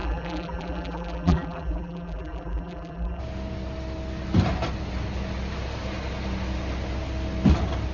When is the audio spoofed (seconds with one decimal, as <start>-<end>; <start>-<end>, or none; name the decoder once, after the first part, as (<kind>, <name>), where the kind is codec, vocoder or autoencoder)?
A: 0.0-3.2 (vocoder, BigVGAN v2)

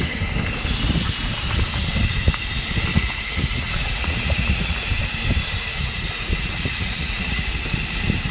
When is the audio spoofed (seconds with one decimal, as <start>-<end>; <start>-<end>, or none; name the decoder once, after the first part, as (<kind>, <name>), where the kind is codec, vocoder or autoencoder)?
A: 2.9-4.8 (vocoder, Vocos); 5.7-7.5

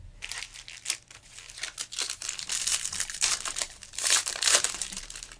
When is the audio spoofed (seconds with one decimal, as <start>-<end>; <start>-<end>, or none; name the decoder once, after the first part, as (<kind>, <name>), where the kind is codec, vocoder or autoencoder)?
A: 2.7-5.0 (vocoder, BigVGAN v2)